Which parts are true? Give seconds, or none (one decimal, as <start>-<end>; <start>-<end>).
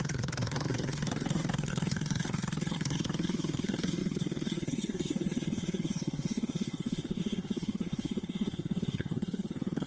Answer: none